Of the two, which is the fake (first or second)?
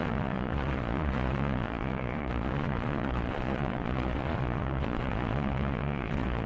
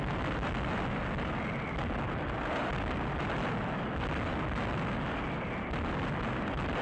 first